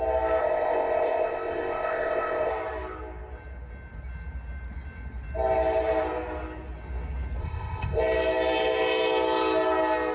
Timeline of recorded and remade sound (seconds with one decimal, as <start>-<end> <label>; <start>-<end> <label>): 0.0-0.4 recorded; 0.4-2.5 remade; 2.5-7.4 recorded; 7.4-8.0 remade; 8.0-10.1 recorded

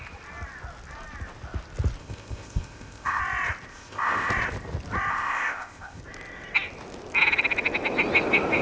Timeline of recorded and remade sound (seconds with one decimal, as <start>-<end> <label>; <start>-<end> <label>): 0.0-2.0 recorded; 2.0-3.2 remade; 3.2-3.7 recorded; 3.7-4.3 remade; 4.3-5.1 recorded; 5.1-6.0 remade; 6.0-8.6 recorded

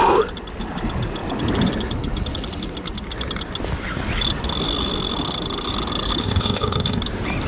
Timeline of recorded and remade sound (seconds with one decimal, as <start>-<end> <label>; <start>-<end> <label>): 0.0-6.2 recorded; 6.2-7.0 remade; 7.0-7.5 recorded

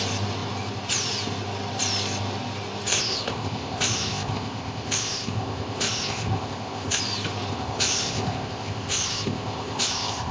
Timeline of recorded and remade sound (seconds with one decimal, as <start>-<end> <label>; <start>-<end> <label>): 0.0-2.9 recorded; 2.9-7.0 remade; 7.0-7.5 recorded; 7.5-10.3 remade